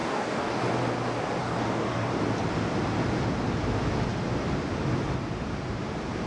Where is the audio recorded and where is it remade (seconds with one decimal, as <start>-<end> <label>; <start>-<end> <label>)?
0.0-0.6 remade; 0.6-1.4 recorded; 1.4-2.1 remade; 2.1-6.3 recorded